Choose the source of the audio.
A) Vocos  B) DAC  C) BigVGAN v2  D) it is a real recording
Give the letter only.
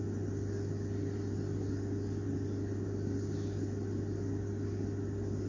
D